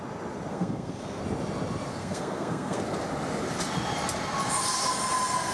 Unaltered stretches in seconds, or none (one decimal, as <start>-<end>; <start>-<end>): 0.0-0.5; 1.2-2.0; 2.8-5.5